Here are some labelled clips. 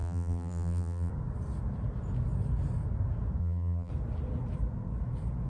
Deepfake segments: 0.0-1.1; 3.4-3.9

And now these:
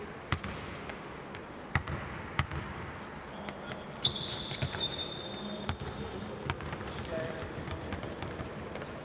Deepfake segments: 7.0-7.9